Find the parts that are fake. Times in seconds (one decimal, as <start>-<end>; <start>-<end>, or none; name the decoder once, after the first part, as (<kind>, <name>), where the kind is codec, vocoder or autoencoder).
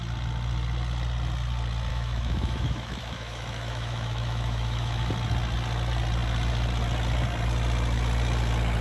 1.9-5.1 (autoencoder, DAC-VAE)